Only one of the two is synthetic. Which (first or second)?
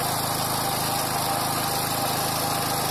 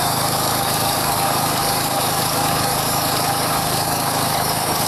second